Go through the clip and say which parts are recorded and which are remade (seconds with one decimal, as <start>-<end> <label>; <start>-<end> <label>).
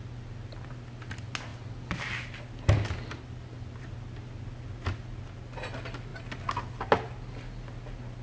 0.0-8.2 recorded